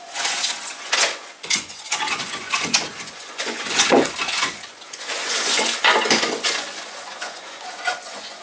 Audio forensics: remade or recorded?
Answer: remade